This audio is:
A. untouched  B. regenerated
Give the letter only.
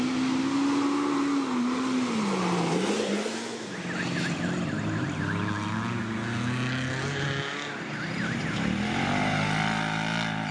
A